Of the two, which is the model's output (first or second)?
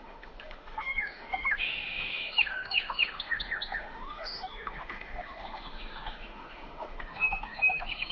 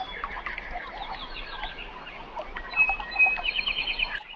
first